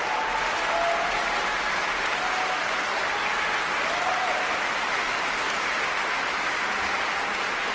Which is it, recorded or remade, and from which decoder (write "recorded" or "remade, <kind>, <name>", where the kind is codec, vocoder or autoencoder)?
recorded